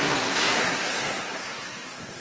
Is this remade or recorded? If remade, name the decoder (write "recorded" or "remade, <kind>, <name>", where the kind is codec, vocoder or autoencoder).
remade, codec, SNAC